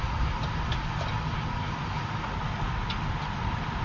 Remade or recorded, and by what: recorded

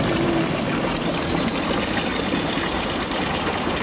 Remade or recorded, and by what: remade, vocoder, BigVGAN v2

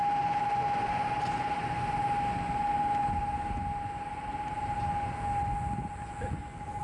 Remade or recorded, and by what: recorded